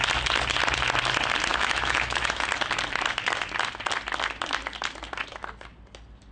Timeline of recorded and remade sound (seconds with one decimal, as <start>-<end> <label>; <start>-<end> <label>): 0.0-1.5 recorded; 1.5-2.5 remade; 2.5-6.3 recorded

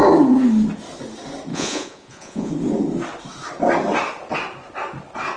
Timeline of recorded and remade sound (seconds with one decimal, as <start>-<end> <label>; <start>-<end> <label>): 0.0-1.5 recorded; 1.5-2.5 remade; 2.5-5.4 recorded

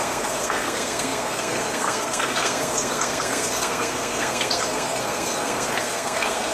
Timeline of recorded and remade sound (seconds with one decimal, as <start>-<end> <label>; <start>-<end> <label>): 0.0-6.5 remade

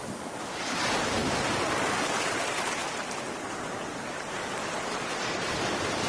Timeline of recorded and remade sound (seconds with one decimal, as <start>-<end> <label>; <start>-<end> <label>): 0.0-6.1 recorded

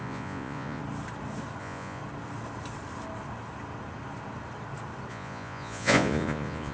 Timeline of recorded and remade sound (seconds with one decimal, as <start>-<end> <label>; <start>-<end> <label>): 0.0-0.8 remade; 0.8-1.6 recorded; 1.6-2.0 remade; 2.0-5.1 recorded; 5.1-6.7 remade

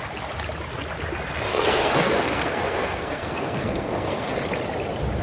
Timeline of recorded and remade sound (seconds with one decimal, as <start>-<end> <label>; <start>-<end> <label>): 0.0-1.5 recorded; 1.5-4.3 remade; 4.3-5.2 recorded

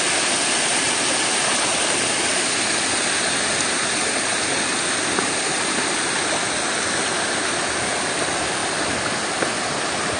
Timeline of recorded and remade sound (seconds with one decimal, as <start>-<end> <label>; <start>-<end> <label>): 0.0-10.2 recorded